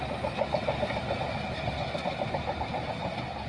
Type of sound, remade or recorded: recorded